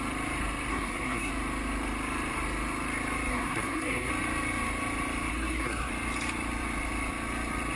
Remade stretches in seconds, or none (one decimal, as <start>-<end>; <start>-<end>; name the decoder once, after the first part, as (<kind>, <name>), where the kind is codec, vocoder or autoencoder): 0.7-1.3 (codec, SNAC); 3.3-4.1; 5.3-5.9